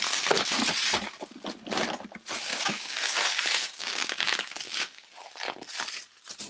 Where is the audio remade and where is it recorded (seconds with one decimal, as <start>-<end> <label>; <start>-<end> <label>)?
0.0-2.5 recorded; 2.5-5.2 remade; 5.2-6.5 recorded